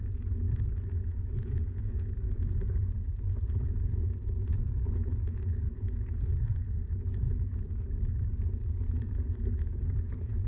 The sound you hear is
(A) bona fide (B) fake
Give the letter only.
B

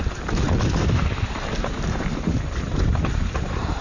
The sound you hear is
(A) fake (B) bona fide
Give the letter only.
B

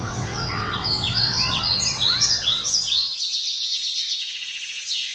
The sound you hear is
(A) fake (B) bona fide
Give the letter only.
A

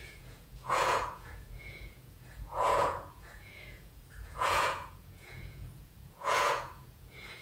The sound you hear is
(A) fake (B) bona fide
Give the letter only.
A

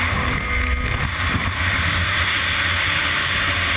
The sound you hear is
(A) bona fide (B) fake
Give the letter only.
A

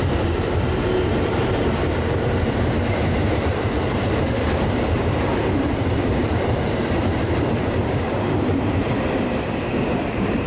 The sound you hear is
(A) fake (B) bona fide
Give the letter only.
A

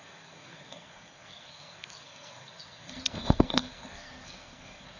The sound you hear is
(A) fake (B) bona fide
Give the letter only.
A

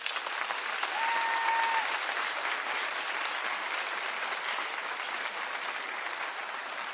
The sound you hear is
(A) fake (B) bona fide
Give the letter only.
B